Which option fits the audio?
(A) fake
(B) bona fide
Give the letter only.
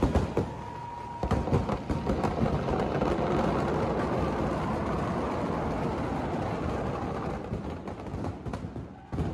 B